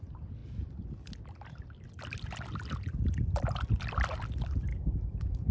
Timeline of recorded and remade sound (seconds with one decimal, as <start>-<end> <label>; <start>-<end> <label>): 0.0-4.7 recorded; 4.7-5.5 remade